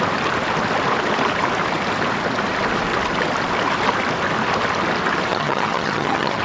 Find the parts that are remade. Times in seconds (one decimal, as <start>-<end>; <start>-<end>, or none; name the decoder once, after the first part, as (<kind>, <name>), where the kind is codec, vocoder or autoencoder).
5.3-6.4 (vocoder, HiFi-GAN)